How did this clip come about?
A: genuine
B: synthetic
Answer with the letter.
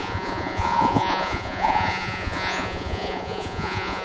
B